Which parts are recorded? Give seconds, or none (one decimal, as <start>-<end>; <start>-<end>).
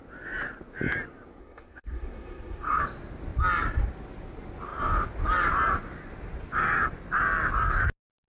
0.0-1.4; 2.8-8.3